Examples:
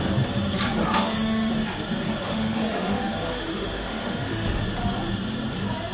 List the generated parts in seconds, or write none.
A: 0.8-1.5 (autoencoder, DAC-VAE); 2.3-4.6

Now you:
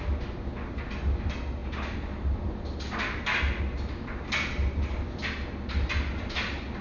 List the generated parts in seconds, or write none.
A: none

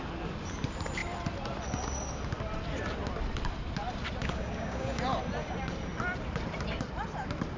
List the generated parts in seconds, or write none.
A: 4.2-5.0 (codec, DAC)

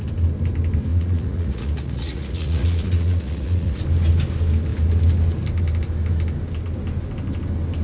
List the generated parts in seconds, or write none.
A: 0.9-3.8 (vocoder, Vocos)

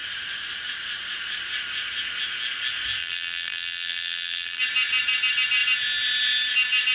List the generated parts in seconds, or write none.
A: 3.0-4.6 (vocoder, BigVGAN v2)